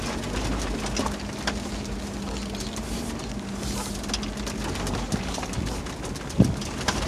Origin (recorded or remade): recorded